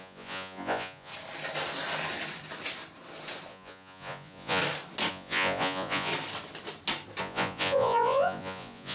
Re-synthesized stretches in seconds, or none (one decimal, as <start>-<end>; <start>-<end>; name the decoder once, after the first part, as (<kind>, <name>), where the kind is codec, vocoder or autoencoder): 0.0-1.1 (vocoder, Vocos); 3.5-4.6; 5.1-6.1; 7.2-8.9